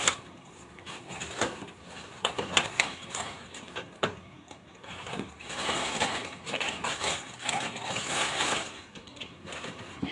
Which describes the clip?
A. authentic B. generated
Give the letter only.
B